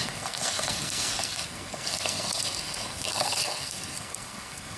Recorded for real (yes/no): no